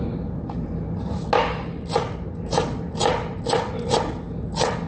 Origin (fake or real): real